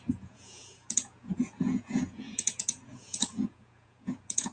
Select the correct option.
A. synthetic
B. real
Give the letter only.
A